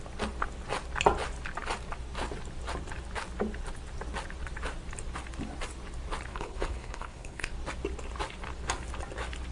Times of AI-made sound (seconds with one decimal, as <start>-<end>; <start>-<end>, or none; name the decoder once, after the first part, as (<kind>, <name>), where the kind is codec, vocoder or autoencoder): 6.3-7.5 (codec, HILCodec)